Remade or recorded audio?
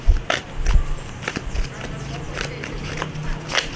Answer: recorded